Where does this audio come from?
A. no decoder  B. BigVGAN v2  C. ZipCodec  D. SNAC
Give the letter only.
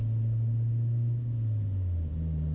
A